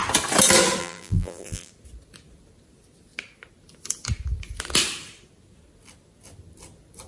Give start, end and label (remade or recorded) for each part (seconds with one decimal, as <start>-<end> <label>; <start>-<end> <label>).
0.0-0.8 recorded; 0.8-1.7 remade; 1.7-7.1 recorded